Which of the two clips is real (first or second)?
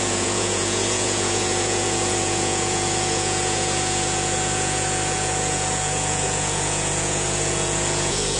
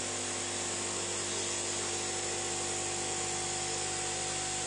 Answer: second